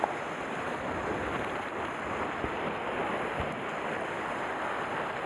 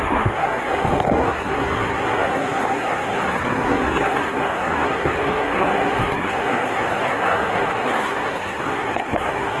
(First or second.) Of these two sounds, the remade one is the second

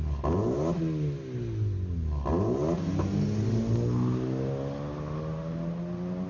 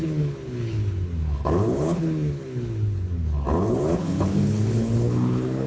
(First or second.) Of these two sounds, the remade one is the second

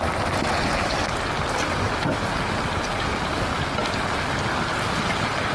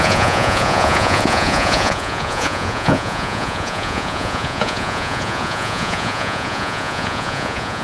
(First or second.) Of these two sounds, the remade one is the second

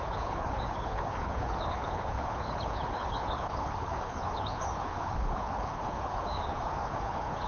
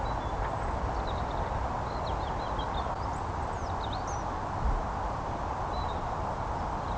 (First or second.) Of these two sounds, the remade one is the first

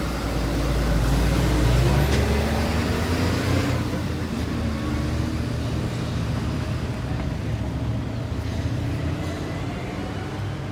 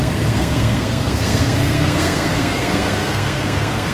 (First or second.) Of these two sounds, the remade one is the second